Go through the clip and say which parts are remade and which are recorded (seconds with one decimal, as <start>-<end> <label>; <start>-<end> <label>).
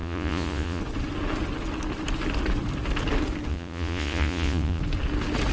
0.0-0.8 remade; 0.8-3.5 recorded; 3.5-4.8 remade; 4.8-5.5 recorded